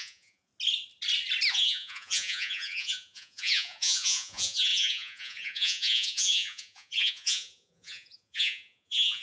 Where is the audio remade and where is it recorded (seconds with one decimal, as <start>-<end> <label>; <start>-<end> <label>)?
0.0-0.5 remade; 0.5-1.5 recorded; 1.5-9.2 remade